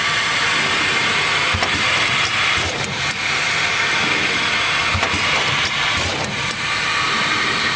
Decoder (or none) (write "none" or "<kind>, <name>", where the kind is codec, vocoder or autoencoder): none